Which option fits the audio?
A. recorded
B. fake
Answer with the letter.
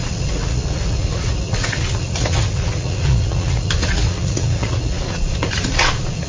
B